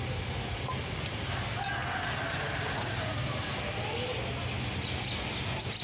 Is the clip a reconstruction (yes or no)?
no